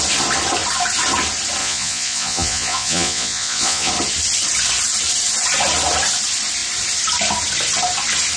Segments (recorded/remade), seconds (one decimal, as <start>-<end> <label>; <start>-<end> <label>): 0.0-1.6 recorded; 1.6-3.9 remade; 3.9-8.4 recorded